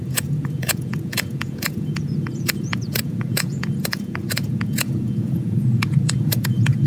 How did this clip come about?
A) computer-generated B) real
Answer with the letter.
A